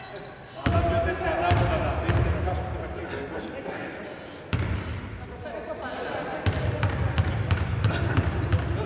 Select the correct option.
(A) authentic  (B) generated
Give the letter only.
A